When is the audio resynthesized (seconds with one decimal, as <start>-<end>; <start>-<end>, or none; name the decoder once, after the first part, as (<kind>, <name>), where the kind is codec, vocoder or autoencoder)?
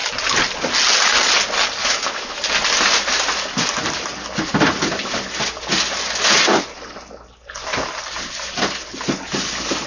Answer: 1.8-2.4 (autoencoder, DAC-VAE)